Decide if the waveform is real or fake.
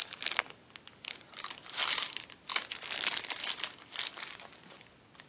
real